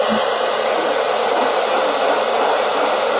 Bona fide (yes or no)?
yes